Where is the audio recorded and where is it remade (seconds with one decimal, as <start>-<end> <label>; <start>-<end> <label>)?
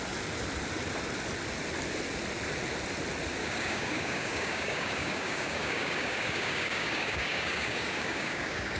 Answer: 0.0-3.4 recorded; 3.4-8.8 remade